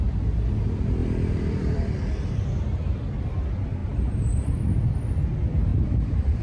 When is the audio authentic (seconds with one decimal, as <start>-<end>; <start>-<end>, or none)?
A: 0.0-1.0; 1.8-3.8; 4.6-5.7